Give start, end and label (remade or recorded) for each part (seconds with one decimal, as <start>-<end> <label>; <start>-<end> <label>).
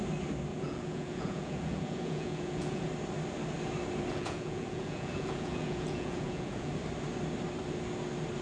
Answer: 0.0-0.5 recorded; 0.5-2.9 remade; 2.9-4.1 recorded; 4.1-6.7 remade; 6.7-8.4 recorded